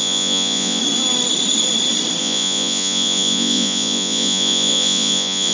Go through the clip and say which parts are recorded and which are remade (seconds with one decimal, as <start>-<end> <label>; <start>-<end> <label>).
0.0-0.8 remade; 0.8-2.2 recorded; 2.2-5.5 remade

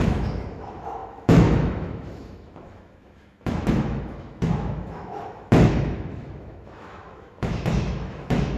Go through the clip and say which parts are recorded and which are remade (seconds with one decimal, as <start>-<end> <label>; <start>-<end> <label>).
0.0-8.6 remade

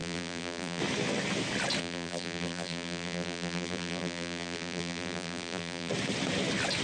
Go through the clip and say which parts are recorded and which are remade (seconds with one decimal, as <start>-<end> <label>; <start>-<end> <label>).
0.0-0.8 remade; 0.8-1.8 recorded; 1.8-5.9 remade; 5.9-6.8 recorded

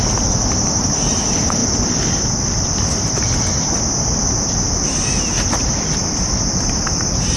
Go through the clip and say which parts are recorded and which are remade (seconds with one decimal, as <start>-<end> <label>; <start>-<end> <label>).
0.0-7.4 recorded

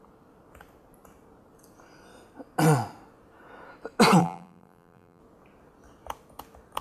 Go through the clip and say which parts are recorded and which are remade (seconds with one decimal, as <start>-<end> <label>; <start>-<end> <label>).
0.0-4.2 recorded; 4.2-5.2 remade; 5.2-6.8 recorded